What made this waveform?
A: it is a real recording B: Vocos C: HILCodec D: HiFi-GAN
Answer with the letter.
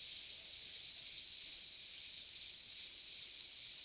A